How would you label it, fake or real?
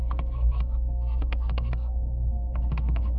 fake